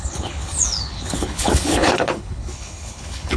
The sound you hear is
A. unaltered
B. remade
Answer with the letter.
B